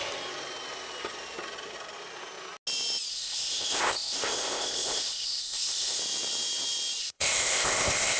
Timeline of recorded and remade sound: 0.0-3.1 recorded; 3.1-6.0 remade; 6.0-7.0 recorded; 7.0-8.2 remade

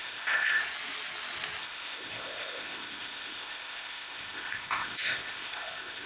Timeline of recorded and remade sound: 0.0-0.6 remade; 0.6-1.6 recorded; 1.6-6.1 remade

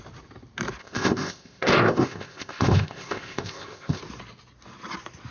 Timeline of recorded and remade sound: 0.0-0.8 recorded; 0.8-4.0 remade; 4.0-5.3 recorded

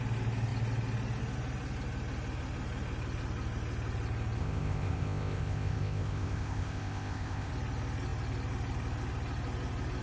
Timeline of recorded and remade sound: 0.0-4.4 recorded; 4.4-7.5 remade; 7.5-10.0 recorded